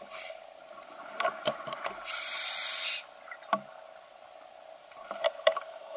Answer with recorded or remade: recorded